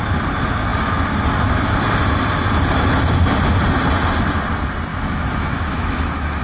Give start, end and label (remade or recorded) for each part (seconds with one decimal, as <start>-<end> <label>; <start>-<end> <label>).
0.0-4.9 recorded; 4.9-6.4 remade

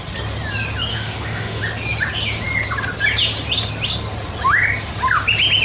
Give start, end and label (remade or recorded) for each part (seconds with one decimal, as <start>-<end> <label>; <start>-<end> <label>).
0.0-0.9 recorded; 0.9-1.6 remade; 1.6-5.6 recorded

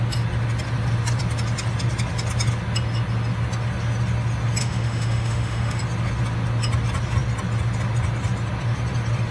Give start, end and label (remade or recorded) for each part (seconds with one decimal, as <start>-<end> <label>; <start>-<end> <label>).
0.0-4.6 recorded; 4.6-5.8 remade; 5.8-9.3 recorded

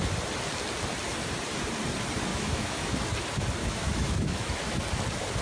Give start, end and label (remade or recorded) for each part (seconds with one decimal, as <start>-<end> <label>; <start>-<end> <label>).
0.0-2.3 recorded; 2.3-3.0 remade; 3.0-3.6 recorded; 3.6-4.8 remade; 4.8-5.4 recorded